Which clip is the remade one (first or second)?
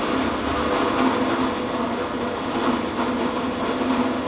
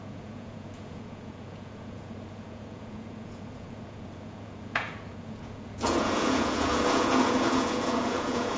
second